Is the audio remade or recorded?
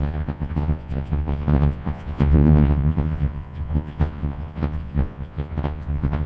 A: remade